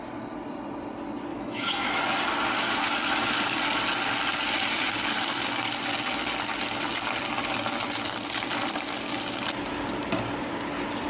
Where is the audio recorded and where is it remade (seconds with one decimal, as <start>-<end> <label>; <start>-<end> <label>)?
0.0-1.3 recorded; 1.3-2.0 remade; 2.0-11.1 recorded